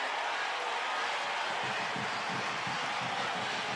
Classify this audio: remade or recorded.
recorded